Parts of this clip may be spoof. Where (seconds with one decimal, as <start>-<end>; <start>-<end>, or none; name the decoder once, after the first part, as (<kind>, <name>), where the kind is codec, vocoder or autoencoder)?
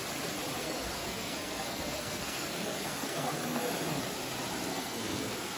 0.6-4.0 (codec, SNAC); 4.7-5.6